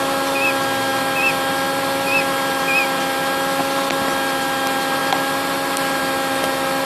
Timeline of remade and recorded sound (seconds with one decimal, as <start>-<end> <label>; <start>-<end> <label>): 0.0-0.9 recorded; 0.9-3.6 remade; 3.6-5.0 recorded; 5.0-6.0 remade; 6.0-6.8 recorded

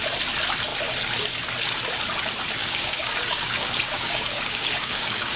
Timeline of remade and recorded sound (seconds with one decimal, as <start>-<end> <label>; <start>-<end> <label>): 0.0-2.6 recorded; 2.6-5.4 remade

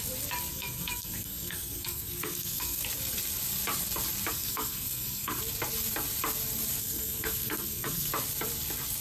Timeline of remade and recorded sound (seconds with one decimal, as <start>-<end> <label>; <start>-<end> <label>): 0.0-0.5 recorded; 0.5-2.8 remade; 2.8-4.3 recorded; 4.3-5.4 remade; 5.4-6.8 recorded; 6.8-8.1 remade; 8.1-9.0 recorded

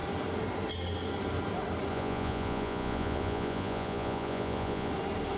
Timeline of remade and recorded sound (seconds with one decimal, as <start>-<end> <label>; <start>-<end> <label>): 0.0-1.9 recorded; 1.9-4.9 remade; 4.9-5.4 recorded

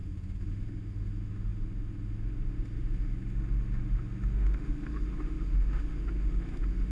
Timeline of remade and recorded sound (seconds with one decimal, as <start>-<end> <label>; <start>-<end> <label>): 0.0-6.9 remade

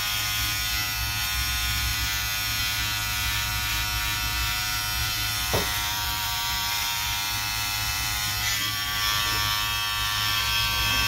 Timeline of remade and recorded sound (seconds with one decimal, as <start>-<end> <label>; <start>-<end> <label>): 0.0-5.0 recorded; 5.0-9.2 remade; 9.2-11.1 recorded